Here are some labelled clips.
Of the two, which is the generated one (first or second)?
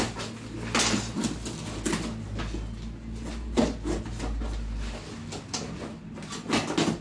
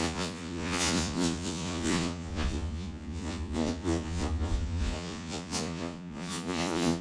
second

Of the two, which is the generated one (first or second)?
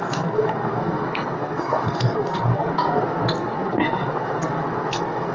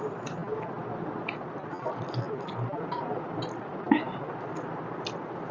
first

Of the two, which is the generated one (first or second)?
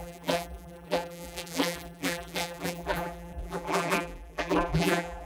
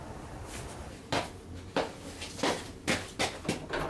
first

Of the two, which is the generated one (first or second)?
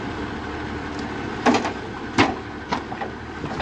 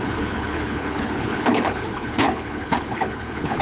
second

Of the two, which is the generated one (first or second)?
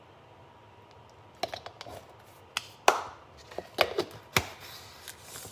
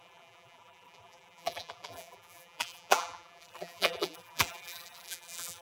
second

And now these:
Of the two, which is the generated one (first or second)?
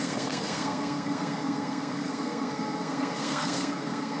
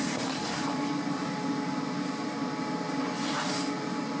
first